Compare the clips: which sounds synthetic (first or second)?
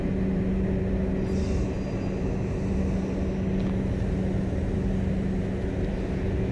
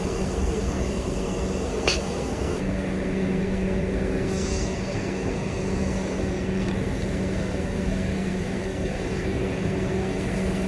second